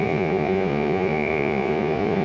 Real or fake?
fake